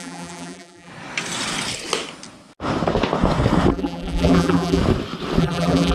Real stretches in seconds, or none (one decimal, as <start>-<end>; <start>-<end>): 0.9-3.7; 4.8-5.4